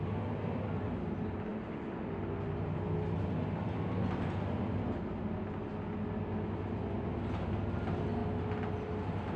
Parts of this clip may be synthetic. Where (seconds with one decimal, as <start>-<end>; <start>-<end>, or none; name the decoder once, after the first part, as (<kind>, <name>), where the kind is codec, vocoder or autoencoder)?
none